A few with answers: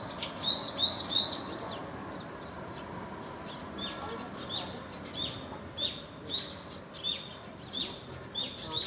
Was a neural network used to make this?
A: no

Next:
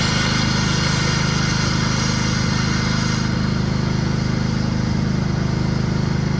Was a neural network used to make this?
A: no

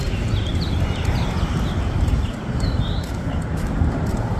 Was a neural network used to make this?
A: no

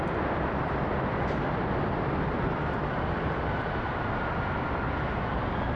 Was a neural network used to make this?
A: no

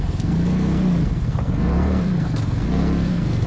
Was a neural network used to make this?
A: yes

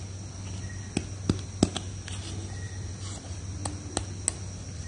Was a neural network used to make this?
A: no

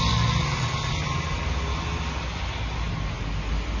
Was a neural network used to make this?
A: no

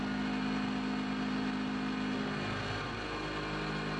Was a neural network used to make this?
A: no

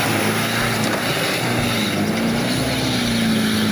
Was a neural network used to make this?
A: no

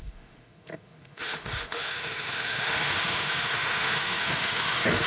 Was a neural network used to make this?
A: yes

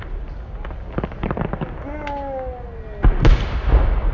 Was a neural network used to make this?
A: no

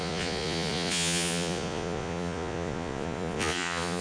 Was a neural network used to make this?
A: yes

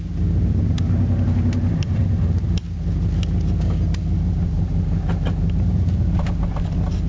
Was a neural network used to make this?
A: no